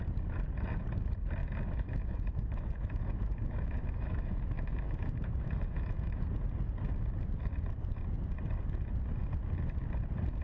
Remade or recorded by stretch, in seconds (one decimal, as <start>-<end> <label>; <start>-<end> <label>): 0.0-1.4 recorded; 1.4-6.2 remade; 6.2-10.4 recorded